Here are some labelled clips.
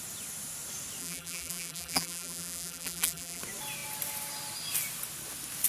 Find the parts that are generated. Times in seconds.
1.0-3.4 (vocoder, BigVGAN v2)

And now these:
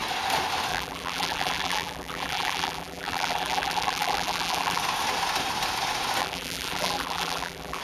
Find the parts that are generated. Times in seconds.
0.7-4.8 (vocoder, BigVGAN v2); 6.2-7.8